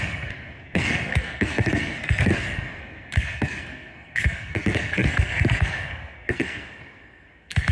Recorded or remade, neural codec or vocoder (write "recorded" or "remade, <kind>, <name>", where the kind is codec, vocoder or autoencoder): remade, codec, SNAC